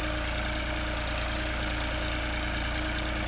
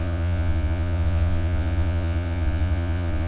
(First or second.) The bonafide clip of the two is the first